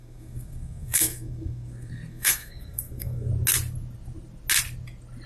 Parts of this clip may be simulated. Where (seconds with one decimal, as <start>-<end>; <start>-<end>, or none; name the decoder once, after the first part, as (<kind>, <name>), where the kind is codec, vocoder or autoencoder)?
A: 0.0-3.3 (codec, SNAC)